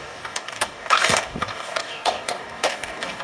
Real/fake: fake